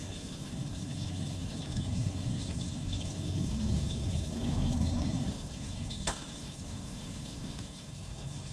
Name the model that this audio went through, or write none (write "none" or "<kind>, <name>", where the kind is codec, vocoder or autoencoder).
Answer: codec, SNAC